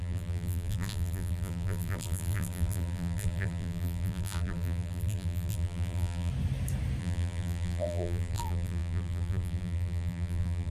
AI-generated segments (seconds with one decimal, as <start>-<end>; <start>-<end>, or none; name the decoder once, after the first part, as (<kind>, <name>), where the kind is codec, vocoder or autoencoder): 0.0-6.3 (vocoder, BigVGAN v2); 7.0-10.7